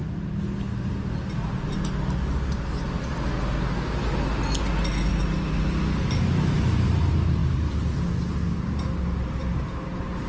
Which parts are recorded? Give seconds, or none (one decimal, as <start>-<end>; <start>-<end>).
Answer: 0.0-10.3